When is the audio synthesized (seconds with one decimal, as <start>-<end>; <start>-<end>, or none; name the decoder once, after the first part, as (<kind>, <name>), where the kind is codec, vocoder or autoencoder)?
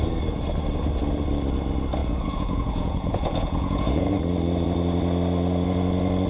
2.0-4.1 (vocoder, Vocos)